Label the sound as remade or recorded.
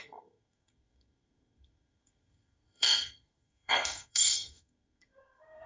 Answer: remade